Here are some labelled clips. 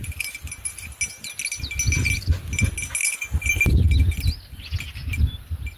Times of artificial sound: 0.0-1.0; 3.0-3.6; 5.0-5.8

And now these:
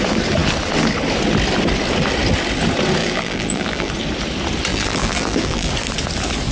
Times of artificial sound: 3.0-3.9; 4.7-5.7

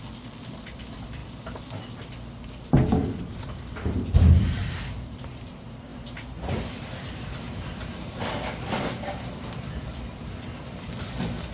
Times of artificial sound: 0.0-1.2; 2.5-11.5

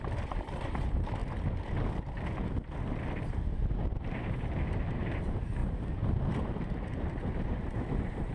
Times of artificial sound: 0.0-1.2; 4.8-5.6; 6.3-8.3

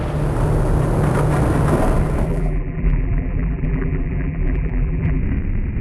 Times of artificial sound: 2.3-5.2

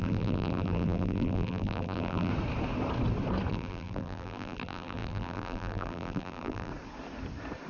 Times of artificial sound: 0.0-2.3; 3.5-6.7

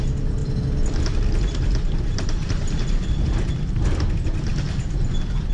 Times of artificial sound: 0.4-3.7

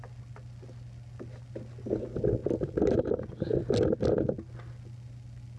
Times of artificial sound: none